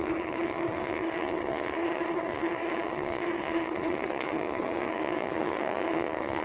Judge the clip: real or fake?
fake